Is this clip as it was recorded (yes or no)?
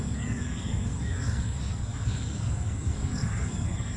no